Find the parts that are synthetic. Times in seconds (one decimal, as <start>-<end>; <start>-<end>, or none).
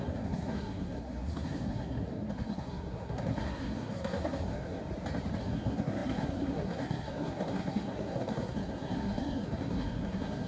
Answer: 0.0-4.8; 5.4-10.5